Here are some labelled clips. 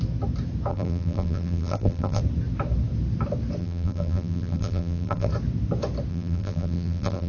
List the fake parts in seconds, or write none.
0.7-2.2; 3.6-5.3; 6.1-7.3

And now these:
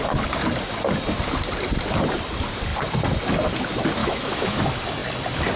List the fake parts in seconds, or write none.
4.0-4.6

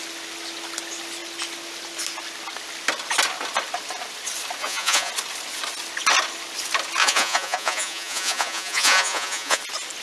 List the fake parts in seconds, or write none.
4.6-5.1; 7.0-9.6

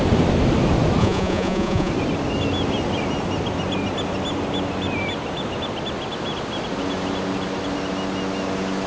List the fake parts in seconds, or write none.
1.0-1.9

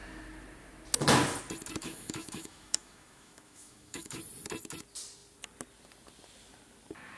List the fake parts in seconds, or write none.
1.8-4.2

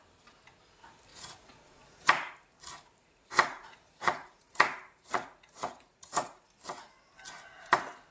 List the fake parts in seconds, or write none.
1.1-2.3; 3.0-6.5

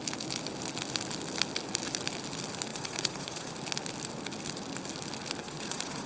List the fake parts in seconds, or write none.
2.7-3.5; 5.4-6.1